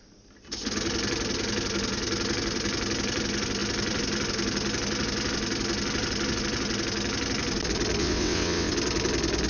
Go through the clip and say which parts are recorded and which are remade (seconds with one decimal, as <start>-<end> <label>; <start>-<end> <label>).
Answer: 0.0-8.0 recorded; 8.0-8.7 remade; 8.7-9.5 recorded